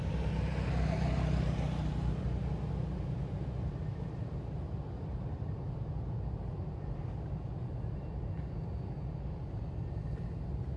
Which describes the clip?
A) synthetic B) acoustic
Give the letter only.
B